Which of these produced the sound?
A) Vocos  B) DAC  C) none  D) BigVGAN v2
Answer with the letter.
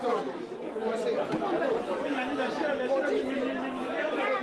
C